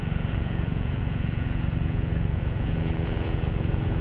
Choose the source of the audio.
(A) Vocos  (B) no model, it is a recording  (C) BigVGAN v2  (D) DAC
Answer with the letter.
A